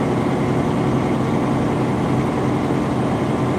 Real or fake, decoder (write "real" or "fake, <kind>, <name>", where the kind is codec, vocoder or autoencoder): real